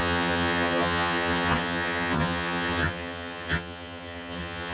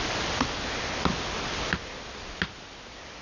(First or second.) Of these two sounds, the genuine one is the second